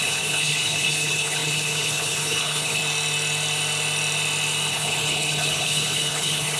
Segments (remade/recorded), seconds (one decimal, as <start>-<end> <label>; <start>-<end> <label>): 0.0-2.8 remade; 2.8-4.7 recorded; 4.7-6.6 remade